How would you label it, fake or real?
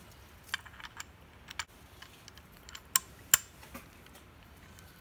real